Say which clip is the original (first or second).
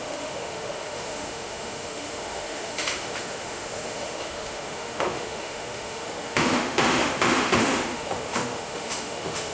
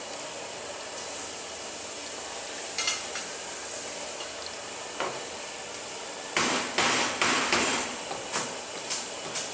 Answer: second